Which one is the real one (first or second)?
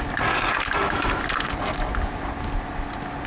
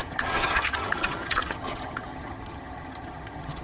first